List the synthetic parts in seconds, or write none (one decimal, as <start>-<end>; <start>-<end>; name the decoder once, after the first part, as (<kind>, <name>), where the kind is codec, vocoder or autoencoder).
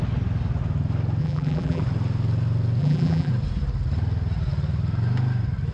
1.2-1.8 (vocoder, BigVGAN v2); 2.8-3.3